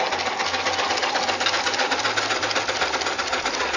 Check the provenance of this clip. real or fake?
real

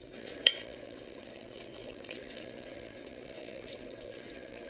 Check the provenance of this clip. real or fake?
fake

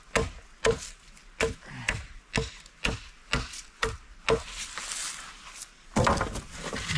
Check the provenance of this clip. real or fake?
real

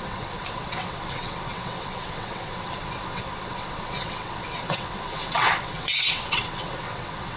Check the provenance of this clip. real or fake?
fake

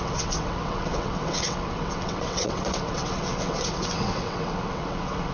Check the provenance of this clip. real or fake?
fake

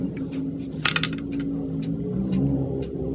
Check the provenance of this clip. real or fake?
real